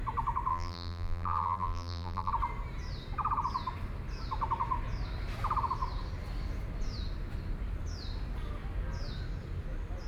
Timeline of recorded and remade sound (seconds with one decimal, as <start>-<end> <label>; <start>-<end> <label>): 0.0-0.5 recorded; 0.5-2.3 remade; 2.3-10.1 recorded